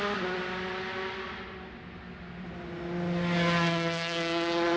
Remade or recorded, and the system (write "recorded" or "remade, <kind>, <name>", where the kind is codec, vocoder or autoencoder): recorded